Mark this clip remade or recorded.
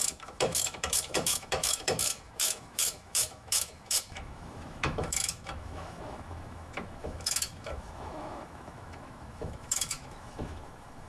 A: remade